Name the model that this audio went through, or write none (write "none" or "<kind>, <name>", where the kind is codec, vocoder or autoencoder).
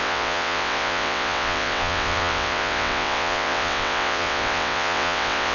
vocoder, WaveNeXt